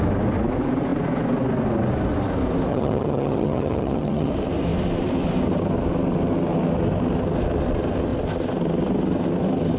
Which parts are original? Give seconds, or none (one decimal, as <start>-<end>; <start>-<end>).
0.0-2.7; 4.3-9.8